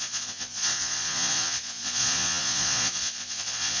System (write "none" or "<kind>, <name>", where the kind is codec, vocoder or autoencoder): vocoder, Vocos